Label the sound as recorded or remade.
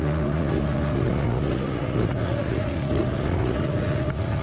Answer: remade